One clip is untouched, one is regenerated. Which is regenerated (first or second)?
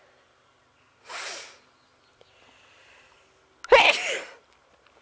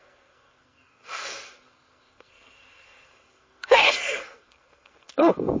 second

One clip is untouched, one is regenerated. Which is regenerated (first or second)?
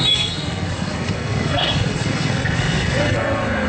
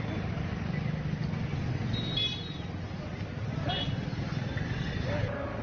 first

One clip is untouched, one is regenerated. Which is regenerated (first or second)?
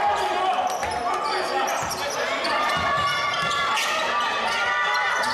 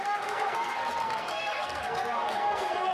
second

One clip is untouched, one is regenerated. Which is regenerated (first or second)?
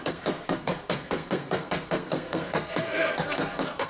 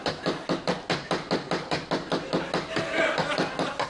first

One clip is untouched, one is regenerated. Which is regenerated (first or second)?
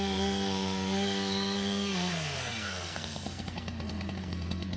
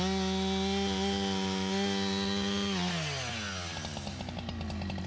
first